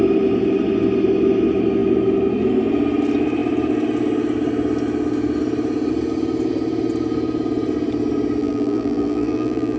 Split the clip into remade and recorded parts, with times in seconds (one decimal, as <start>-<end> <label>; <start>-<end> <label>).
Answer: 0.0-8.4 recorded; 8.4-9.8 remade